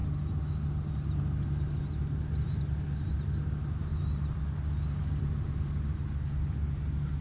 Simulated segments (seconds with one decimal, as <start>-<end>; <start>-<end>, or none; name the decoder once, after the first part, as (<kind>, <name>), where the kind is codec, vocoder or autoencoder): none